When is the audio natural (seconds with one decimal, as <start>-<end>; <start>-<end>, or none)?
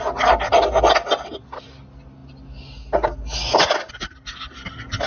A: 0.0-5.1